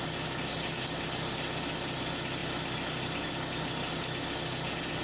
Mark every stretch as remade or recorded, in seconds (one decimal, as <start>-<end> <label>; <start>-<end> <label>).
0.0-5.0 recorded